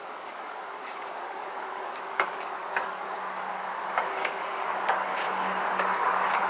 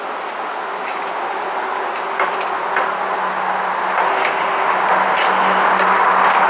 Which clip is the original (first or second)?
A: second